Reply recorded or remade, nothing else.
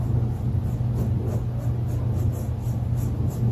recorded